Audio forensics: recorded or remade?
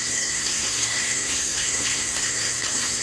remade